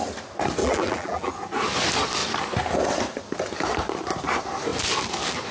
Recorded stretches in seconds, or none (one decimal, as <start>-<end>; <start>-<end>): 0.0-0.6; 1.3-5.5